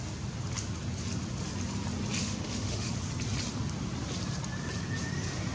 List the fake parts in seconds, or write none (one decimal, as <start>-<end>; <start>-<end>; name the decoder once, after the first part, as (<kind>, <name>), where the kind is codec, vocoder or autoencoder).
2.2-2.9 (autoencoder, DAC-VAE)